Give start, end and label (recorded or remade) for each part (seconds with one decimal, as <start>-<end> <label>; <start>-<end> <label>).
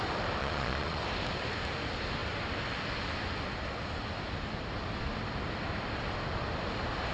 0.0-0.4 recorded; 0.4-1.0 remade; 1.0-7.1 recorded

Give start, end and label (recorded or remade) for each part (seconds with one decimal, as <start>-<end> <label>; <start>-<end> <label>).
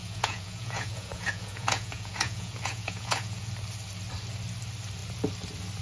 0.0-3.5 remade; 3.5-5.8 recorded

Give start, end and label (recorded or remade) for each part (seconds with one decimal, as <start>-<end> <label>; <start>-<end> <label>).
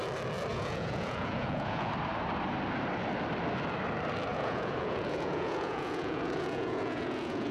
0.0-0.5 recorded; 0.5-1.9 remade; 1.9-4.3 recorded; 4.3-7.5 remade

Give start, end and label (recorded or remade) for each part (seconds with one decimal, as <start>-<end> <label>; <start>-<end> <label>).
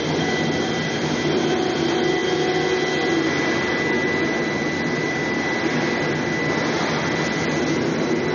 0.0-8.3 recorded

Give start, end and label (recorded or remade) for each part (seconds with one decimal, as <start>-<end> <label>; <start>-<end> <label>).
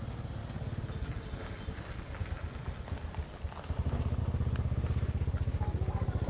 0.0-6.3 recorded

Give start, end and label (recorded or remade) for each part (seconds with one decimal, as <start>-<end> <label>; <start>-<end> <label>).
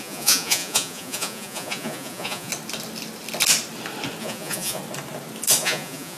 0.0-2.5 remade; 2.5-4.2 recorded; 4.2-4.8 remade; 4.8-5.6 recorded; 5.6-6.2 remade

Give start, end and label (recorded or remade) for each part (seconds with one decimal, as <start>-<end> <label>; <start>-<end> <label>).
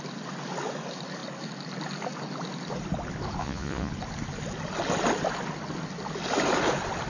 0.0-3.4 recorded; 3.4-3.9 remade; 3.9-7.1 recorded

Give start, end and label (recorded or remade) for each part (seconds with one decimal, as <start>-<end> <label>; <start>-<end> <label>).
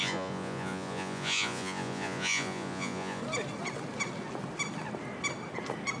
0.0-3.2 remade; 3.2-6.0 recorded